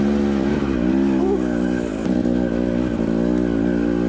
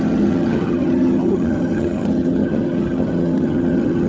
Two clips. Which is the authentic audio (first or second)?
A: first